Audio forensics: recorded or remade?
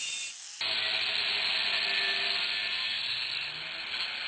recorded